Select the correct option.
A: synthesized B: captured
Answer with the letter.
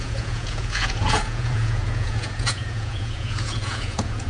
A